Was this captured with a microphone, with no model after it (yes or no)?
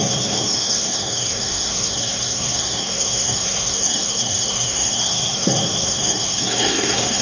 no